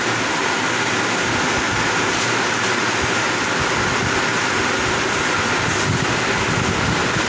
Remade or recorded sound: recorded